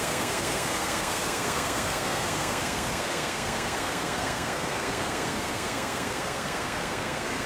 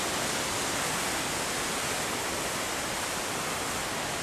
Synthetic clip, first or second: first